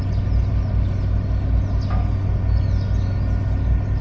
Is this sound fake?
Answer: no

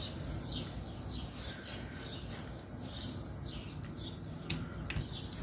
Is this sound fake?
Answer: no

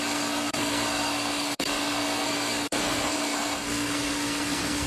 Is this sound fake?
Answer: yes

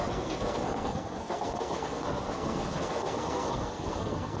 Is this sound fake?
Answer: yes